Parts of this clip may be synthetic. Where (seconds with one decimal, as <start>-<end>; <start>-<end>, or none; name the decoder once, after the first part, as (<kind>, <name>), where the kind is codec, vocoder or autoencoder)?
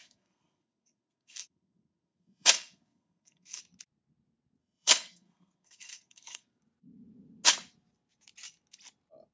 0.0-3.6 (codec, SNAC); 4.6-6.6